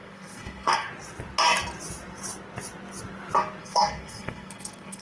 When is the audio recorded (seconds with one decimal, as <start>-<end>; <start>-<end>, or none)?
0.9-3.6